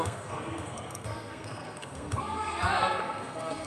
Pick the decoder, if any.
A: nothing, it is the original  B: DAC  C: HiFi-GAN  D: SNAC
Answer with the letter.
D